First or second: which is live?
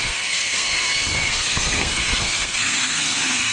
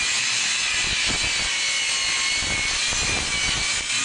second